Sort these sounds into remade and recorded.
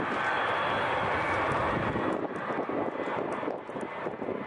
recorded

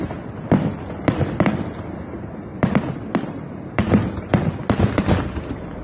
recorded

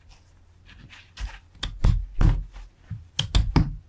recorded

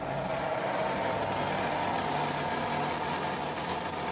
recorded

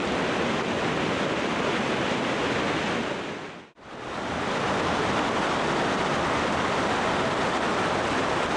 recorded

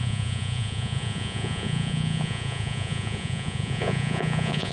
remade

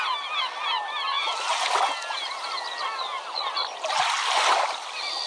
recorded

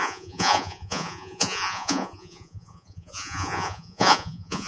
remade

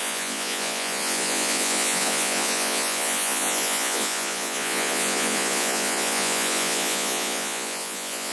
remade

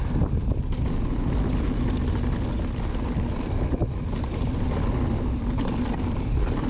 recorded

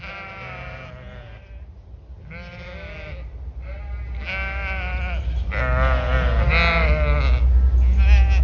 recorded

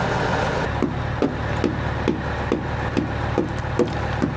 recorded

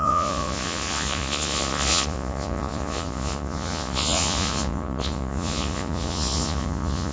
remade